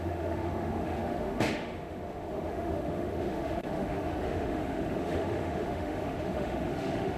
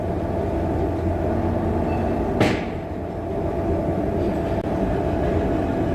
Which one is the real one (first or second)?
second